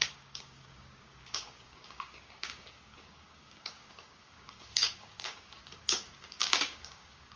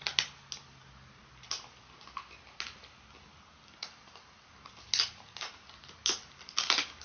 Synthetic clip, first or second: first